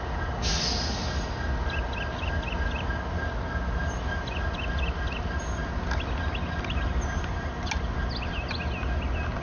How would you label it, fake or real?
real